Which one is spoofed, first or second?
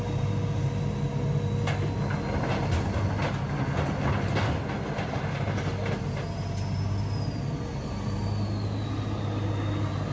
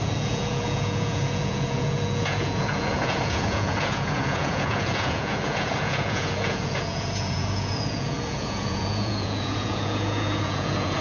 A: second